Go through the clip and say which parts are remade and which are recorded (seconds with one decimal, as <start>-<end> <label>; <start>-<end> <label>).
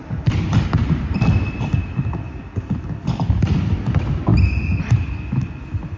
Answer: 0.0-6.0 recorded